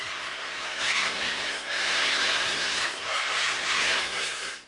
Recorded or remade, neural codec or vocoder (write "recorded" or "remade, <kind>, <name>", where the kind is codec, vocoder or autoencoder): remade, codec, SNAC